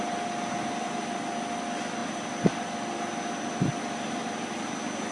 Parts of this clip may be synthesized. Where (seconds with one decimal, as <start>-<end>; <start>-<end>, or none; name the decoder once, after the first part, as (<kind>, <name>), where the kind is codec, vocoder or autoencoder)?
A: none